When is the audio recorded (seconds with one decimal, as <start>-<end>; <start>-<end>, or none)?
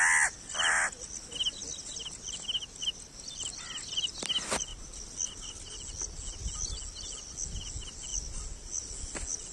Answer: 0.0-9.5